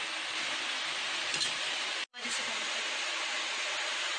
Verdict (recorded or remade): recorded